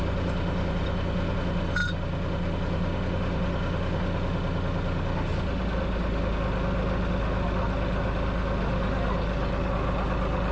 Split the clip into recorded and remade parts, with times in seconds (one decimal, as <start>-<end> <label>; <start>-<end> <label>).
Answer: 0.0-10.5 recorded